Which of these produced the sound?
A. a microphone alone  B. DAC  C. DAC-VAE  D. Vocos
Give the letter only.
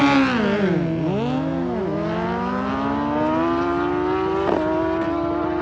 A